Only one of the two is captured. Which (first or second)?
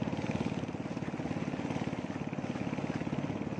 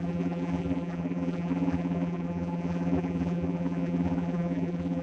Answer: first